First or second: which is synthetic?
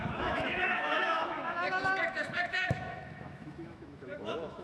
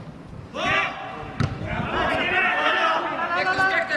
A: first